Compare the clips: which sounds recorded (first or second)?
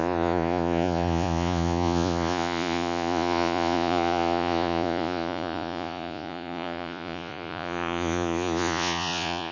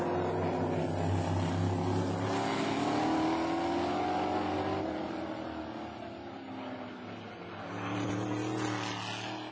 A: second